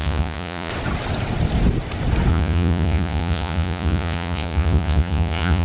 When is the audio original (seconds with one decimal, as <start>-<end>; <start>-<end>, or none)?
0.7-2.3